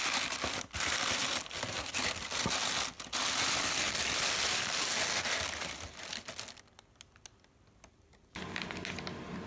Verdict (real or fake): real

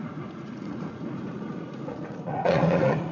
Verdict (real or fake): fake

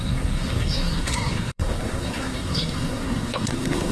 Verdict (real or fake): fake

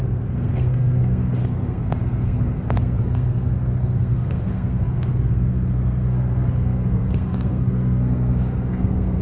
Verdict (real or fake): fake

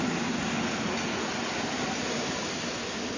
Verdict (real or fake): real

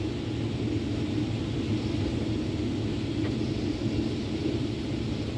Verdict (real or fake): real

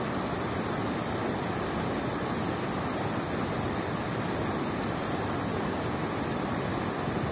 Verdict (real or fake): real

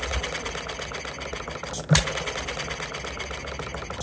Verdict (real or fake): real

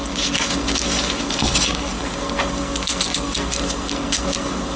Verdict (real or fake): fake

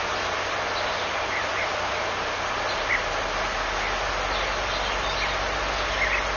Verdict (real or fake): real